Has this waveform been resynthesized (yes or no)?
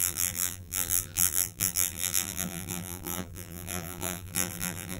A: yes